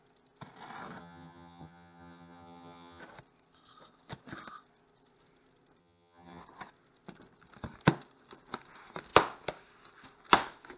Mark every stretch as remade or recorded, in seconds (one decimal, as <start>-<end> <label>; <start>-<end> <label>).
0.0-1.0 recorded; 1.0-3.0 remade; 3.0-5.8 recorded; 5.8-6.4 remade; 6.4-10.8 recorded